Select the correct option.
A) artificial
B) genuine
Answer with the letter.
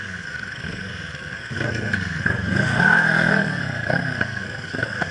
A